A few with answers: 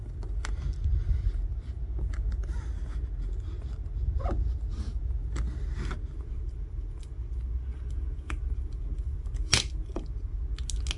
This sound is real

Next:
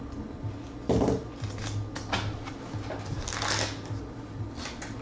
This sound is real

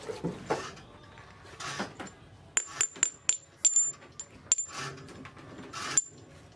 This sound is real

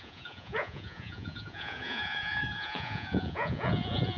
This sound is fake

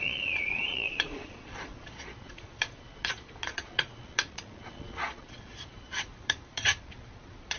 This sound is fake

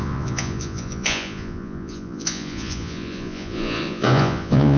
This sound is fake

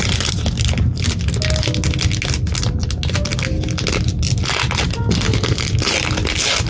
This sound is real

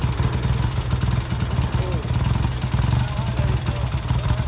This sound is real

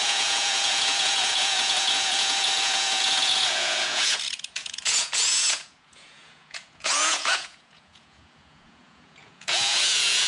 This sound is fake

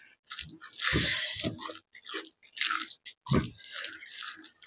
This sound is real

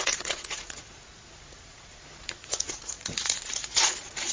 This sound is fake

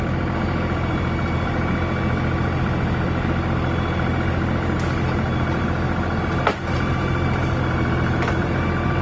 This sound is real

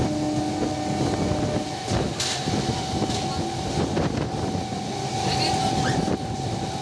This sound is real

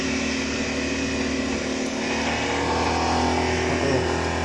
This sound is real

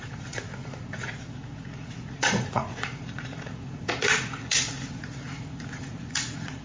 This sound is fake